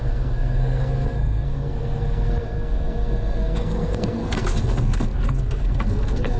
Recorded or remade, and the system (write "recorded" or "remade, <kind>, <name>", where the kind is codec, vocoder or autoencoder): remade, codec, SNAC